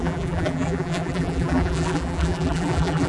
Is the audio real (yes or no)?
no